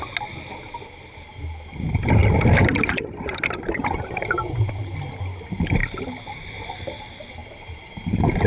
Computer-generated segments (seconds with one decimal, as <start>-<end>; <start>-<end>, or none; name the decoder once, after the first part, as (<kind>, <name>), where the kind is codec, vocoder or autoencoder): 2.2-4.9 (vocoder, BigVGAN v2); 5.8-6.5; 7.4-8.1